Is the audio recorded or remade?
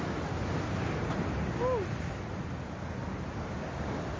recorded